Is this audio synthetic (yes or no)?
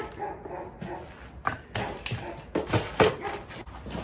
no